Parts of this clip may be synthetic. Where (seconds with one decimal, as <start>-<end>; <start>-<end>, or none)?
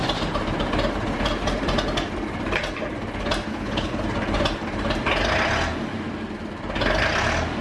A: 3.5-4.0